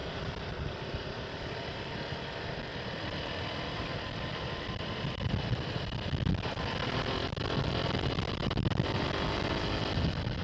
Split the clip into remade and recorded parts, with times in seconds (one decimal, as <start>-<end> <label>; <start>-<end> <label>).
0.0-1.9 remade; 1.9-2.7 recorded; 2.7-6.1 remade; 6.1-10.4 recorded